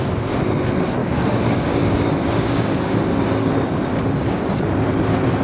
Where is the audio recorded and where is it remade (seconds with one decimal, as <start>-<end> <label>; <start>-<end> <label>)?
0.0-1.0 recorded; 1.0-3.5 remade; 3.5-3.9 recorded; 3.9-4.7 remade; 4.7-5.4 recorded